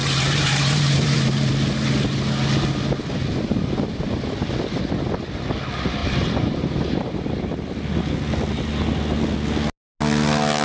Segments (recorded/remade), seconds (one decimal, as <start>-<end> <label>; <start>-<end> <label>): 0.0-1.5 remade; 1.5-6.0 recorded; 6.0-7.2 remade; 7.2-10.6 recorded